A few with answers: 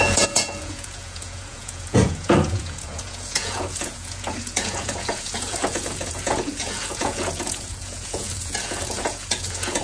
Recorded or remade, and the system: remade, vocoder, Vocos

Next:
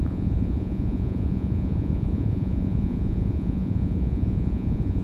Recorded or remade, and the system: remade, vocoder, Vocos